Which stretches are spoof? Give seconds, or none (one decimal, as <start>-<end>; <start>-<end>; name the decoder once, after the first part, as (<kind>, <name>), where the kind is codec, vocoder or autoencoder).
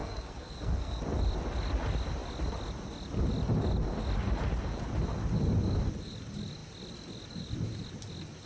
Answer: 0.0-1.0 (codec, SNAC)